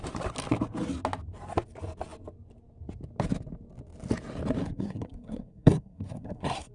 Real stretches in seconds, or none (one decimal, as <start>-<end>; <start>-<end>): 0.0-4.6